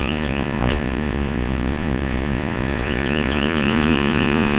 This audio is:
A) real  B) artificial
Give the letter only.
B